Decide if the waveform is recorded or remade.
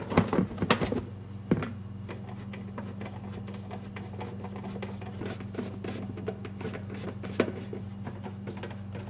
recorded